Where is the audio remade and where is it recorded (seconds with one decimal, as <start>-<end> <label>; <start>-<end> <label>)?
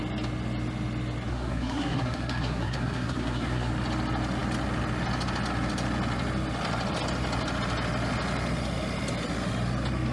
0.0-1.3 recorded; 1.3-3.7 remade; 3.7-10.1 recorded